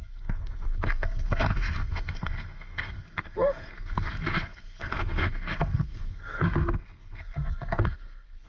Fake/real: fake